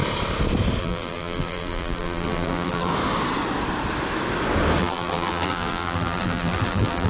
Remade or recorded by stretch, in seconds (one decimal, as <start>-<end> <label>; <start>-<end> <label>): 0.0-0.8 recorded; 0.8-2.9 remade; 2.9-4.8 recorded; 4.8-7.1 remade